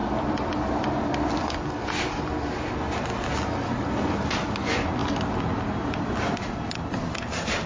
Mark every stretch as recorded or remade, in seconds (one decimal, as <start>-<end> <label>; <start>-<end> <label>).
0.0-7.7 recorded